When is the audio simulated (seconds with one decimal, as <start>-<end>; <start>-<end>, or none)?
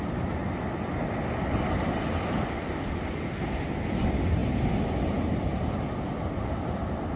none